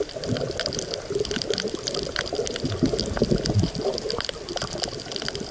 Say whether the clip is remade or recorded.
remade